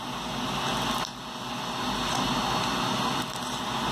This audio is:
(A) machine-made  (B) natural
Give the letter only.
B